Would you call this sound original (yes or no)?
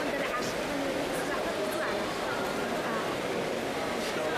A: yes